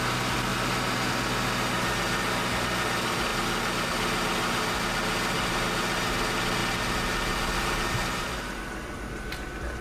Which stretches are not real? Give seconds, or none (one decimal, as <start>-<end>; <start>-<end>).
none